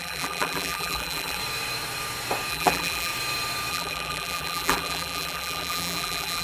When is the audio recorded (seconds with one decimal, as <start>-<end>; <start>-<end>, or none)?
1.4-2.5; 3.1-3.7